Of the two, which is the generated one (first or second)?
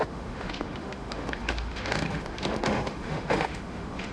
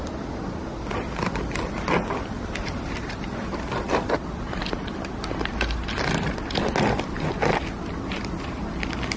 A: first